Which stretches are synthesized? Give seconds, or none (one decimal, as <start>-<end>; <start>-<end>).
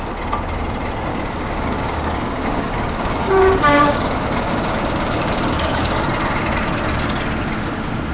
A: 1.1-6.0